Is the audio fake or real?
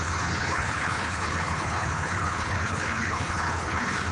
fake